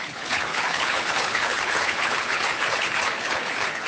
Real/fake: fake